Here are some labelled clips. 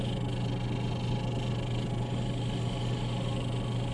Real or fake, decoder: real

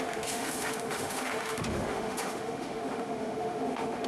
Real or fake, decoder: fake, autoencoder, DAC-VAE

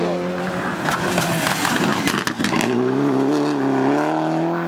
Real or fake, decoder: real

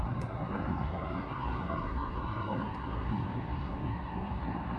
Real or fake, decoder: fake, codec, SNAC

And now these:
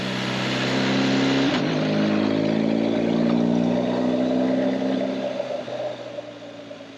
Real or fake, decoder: real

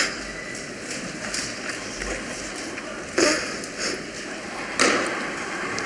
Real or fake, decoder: real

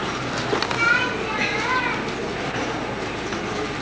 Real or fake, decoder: real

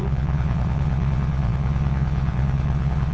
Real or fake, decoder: fake, vocoder, Vocos